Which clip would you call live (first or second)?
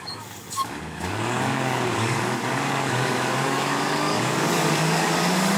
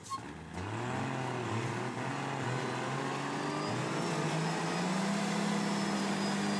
second